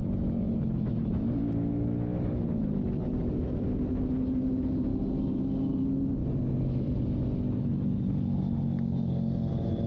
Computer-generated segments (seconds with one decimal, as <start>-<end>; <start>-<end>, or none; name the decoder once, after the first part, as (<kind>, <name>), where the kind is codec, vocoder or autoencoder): 0.0-3.6 (autoencoder, DAC-VAE)